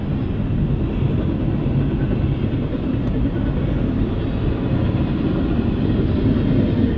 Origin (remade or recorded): recorded